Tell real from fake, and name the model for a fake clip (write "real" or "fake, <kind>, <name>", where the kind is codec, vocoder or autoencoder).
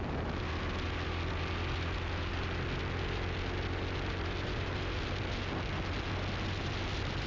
real